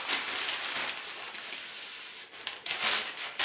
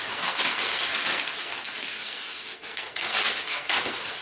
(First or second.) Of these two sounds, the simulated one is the second